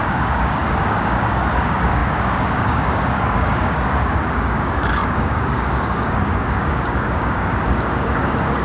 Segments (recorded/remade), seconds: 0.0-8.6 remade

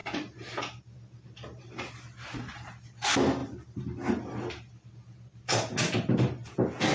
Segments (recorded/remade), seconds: 0.0-6.9 recorded